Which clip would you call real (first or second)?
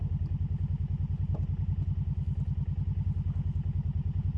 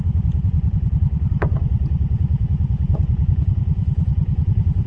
first